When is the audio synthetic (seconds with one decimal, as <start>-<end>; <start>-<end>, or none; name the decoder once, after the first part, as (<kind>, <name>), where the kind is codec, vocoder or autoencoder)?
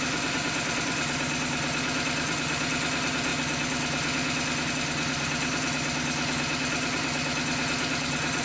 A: none